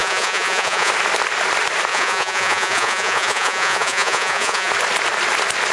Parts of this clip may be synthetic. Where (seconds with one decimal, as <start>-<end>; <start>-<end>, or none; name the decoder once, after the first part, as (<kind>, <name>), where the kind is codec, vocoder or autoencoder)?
0.0-0.9 (vocoder, Vocos); 1.9-4.7